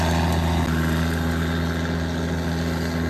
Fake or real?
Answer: real